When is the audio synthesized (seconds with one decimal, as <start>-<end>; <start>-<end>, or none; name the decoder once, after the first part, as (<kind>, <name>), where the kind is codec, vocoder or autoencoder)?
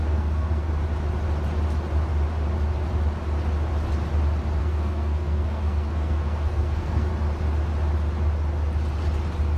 0.0-0.7 (codec, SNAC); 4.6-7.1